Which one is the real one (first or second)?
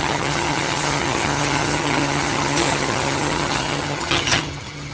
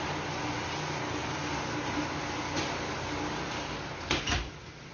second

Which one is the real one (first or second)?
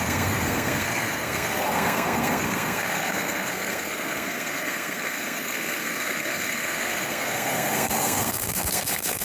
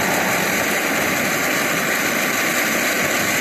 second